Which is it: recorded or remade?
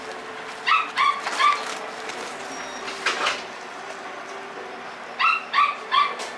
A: recorded